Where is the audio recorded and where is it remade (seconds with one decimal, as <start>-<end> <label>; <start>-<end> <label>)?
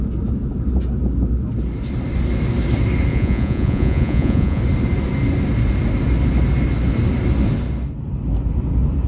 0.0-3.1 recorded; 3.1-4.6 remade; 4.6-9.1 recorded